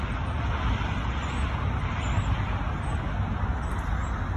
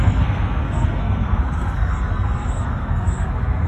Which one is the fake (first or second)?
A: second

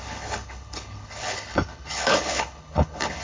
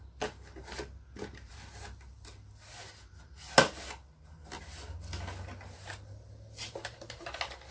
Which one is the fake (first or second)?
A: first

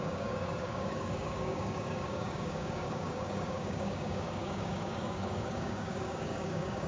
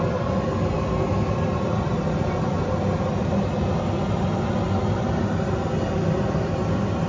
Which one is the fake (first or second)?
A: first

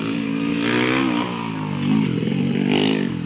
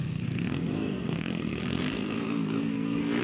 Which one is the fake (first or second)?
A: second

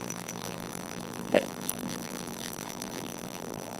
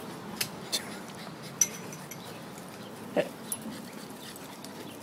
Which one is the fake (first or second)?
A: first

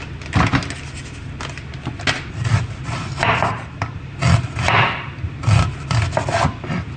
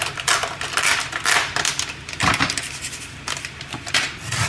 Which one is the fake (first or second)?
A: second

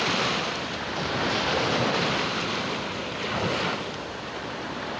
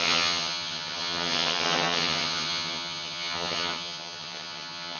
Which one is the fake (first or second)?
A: second